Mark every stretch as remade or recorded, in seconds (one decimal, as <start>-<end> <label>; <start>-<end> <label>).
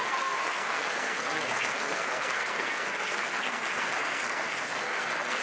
0.0-5.4 remade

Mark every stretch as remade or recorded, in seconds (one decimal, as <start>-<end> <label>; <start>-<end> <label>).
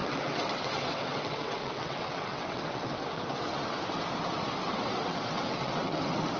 0.0-3.8 remade; 3.8-4.7 recorded; 4.7-6.0 remade; 6.0-6.4 recorded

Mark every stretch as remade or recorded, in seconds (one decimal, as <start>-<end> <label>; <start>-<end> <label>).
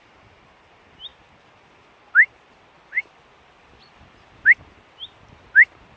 0.0-6.0 recorded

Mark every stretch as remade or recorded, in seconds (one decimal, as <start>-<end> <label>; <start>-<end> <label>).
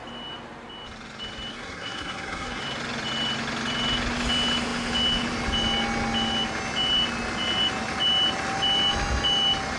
0.0-1.5 recorded; 1.5-2.6 remade; 2.6-9.8 recorded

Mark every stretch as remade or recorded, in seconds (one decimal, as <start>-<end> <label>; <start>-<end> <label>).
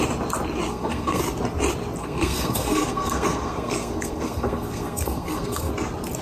0.0-0.7 recorded; 0.7-1.2 remade; 1.2-2.0 recorded; 2.0-5.7 remade; 5.7-6.2 recorded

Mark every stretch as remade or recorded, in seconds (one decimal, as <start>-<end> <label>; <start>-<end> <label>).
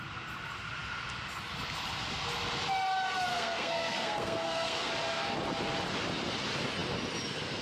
0.0-3.3 recorded; 3.3-4.9 remade; 4.9-7.6 recorded